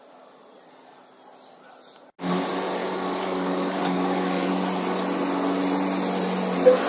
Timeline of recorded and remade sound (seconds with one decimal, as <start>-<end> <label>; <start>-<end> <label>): 0.0-2.8 recorded; 2.8-4.5 remade; 4.5-6.9 recorded